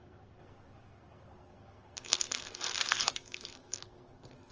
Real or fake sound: fake